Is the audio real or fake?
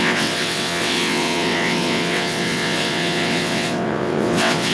fake